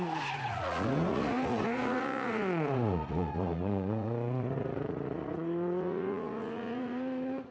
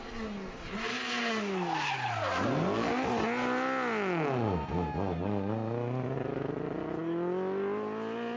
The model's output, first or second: first